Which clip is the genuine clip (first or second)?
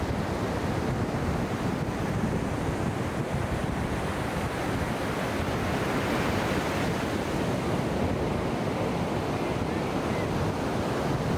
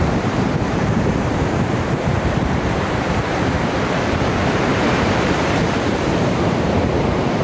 first